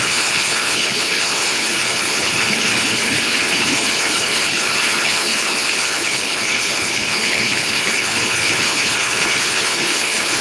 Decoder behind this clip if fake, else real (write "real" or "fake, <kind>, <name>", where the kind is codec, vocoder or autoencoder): fake, codec, HILCodec